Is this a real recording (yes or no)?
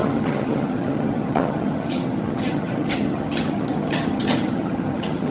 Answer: no